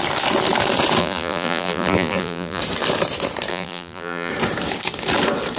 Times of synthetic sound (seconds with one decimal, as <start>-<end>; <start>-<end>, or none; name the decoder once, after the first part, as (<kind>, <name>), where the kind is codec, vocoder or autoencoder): 1.0-2.6 (vocoder, BigVGAN v2); 3.5-4.3